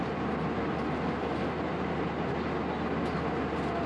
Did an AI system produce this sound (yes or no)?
no